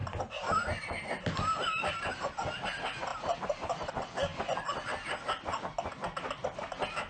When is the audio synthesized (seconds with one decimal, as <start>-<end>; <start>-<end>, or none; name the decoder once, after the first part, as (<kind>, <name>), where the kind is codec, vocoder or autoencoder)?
3.1-3.9 (vocoder, BigVGAN v2)